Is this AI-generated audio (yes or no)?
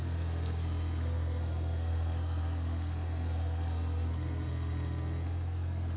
yes